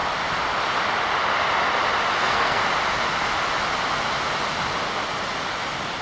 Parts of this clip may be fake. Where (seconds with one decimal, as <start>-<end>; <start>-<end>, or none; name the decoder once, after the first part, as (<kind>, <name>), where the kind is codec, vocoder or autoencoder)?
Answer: 2.2-2.6 (codec, SNAC)

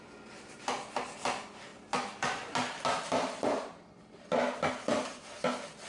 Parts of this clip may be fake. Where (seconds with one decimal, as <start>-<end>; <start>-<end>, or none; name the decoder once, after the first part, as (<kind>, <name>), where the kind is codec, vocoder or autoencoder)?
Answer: none

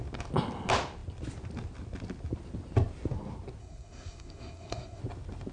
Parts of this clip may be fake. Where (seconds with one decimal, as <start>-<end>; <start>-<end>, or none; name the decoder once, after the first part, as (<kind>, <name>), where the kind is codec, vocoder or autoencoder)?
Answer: 3.6-5.0 (codec, SNAC)

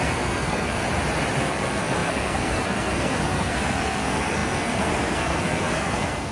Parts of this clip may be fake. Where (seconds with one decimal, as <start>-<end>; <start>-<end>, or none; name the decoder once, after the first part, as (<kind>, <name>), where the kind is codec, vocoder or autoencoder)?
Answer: 0.0-0.8 (codec, SNAC); 1.4-6.3